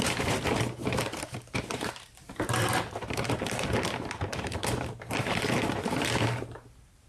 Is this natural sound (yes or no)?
no